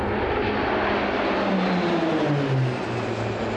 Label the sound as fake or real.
real